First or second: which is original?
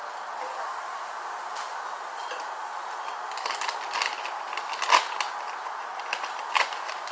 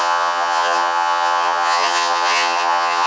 first